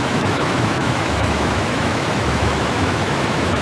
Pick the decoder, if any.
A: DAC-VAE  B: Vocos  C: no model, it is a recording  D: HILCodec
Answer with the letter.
A